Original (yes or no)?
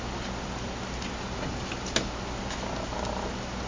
yes